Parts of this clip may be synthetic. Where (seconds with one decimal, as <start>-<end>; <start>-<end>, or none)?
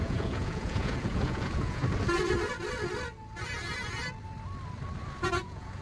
0.0-1.8; 5.3-5.8